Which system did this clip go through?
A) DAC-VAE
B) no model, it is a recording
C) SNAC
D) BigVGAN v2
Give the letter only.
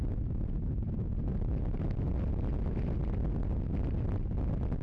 B